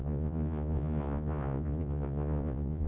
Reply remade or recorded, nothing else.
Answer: remade